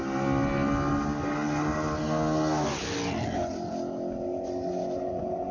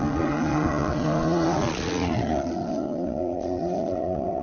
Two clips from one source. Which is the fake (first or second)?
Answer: second